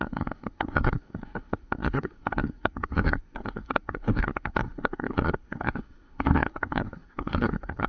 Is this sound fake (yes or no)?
yes